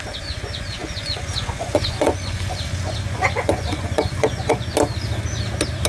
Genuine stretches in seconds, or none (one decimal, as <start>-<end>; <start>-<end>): 4.7-5.9